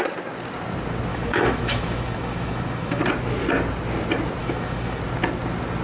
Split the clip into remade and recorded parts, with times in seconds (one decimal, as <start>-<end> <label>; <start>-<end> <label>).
0.0-1.1 recorded; 1.1-3.0 remade; 3.0-4.4 recorded; 4.4-5.0 remade; 5.0-5.8 recorded

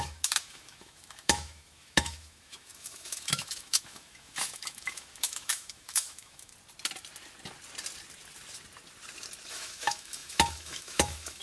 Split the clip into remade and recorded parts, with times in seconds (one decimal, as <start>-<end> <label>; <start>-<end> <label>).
0.0-6.5 remade; 6.5-9.5 recorded; 9.5-11.4 remade

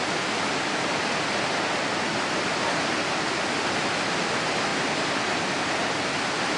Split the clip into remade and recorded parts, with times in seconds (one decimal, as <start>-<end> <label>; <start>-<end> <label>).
0.0-6.6 recorded

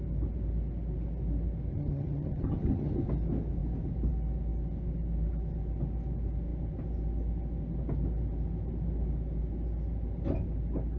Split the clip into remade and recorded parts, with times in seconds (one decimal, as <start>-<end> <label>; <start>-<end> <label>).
0.0-1.7 recorded; 1.7-2.9 remade; 2.9-11.0 recorded

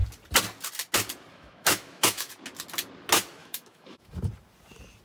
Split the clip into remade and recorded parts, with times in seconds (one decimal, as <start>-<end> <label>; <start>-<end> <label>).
0.0-1.3 recorded; 1.3-2.3 remade; 2.3-3.4 recorded; 3.4-4.1 remade; 4.1-5.0 recorded

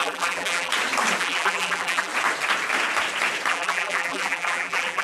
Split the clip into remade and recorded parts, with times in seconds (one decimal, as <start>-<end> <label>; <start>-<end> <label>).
0.0-0.7 remade; 0.7-1.2 recorded; 1.2-2.1 remade; 2.1-3.5 recorded; 3.5-5.0 remade

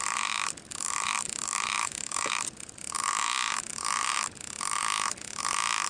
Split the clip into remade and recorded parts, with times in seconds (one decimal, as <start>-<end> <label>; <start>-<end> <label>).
0.0-1.8 recorded; 1.8-2.3 remade; 2.3-5.9 recorded

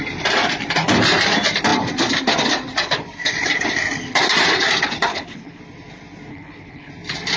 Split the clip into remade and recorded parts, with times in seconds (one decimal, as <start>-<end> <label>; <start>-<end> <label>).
0.0-5.1 recorded; 5.1-5.6 remade; 5.6-6.3 recorded; 6.3-6.9 remade; 6.9-7.4 recorded